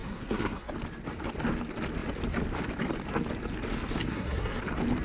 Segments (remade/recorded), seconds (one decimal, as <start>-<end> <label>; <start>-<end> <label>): 0.0-0.7 remade; 0.7-4.1 recorded; 4.1-4.6 remade; 4.6-5.0 recorded